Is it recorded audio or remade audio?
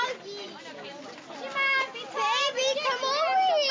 recorded